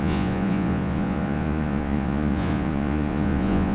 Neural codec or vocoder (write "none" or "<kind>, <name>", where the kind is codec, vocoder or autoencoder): vocoder, Vocos